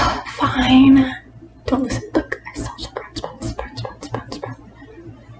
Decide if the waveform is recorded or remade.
recorded